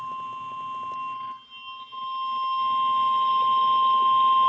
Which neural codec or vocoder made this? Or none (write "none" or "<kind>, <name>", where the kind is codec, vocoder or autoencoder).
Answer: none